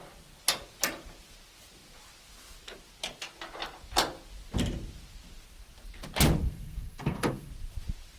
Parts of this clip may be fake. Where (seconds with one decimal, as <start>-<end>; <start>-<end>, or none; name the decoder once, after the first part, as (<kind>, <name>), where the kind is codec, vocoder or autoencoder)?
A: 6.4-7.5 (codec, SNAC)